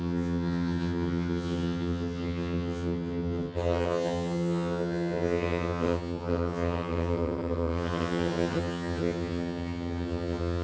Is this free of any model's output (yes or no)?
no